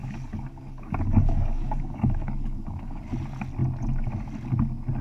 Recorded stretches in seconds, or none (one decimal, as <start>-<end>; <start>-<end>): 3.0-5.0